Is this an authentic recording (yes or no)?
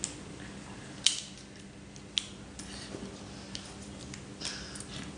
yes